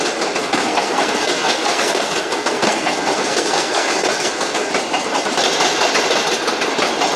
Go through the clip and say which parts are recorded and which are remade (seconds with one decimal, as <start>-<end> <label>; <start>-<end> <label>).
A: 0.0-0.4 recorded; 0.4-4.7 remade; 4.7-7.2 recorded